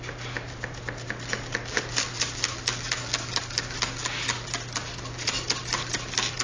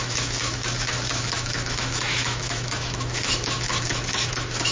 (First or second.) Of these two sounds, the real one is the first